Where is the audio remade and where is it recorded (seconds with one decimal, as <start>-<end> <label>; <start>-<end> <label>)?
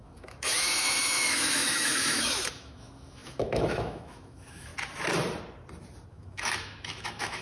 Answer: 0.0-4.7 remade; 4.7-6.1 recorded; 6.1-7.4 remade